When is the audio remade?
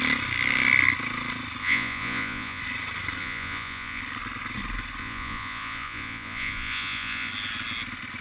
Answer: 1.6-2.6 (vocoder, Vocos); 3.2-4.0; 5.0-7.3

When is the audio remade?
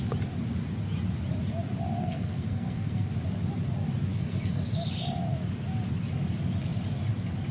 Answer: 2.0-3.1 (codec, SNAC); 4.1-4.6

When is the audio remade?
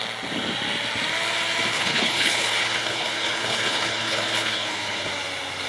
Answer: 1.7-5.1 (codec, HILCodec)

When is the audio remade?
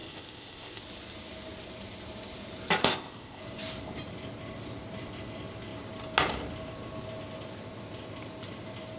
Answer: 0.0-0.8 (codec, ZipCodec); 2.8-3.4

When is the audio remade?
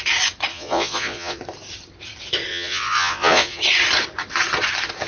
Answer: 0.5-1.4 (vocoder, Vocos); 2.5-3.6